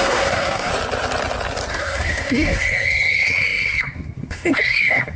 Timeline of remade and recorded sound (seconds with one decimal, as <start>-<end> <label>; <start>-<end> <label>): 0.0-0.7 remade; 0.7-1.7 recorded; 1.7-5.2 remade